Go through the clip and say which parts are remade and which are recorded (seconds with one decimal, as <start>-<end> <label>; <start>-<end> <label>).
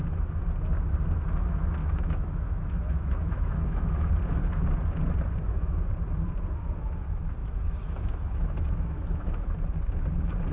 0.0-1.8 recorded; 1.8-4.1 remade; 4.1-7.4 recorded; 7.4-9.5 remade; 9.5-10.5 recorded